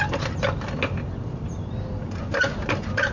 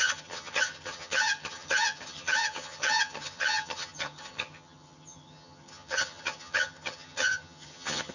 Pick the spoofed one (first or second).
second